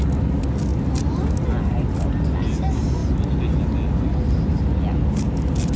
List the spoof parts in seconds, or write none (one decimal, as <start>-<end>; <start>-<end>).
none